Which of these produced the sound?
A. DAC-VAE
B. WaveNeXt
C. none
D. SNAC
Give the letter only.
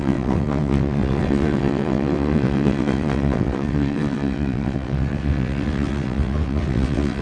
B